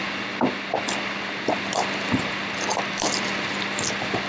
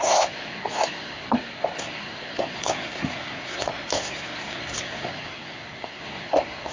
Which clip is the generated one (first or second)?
second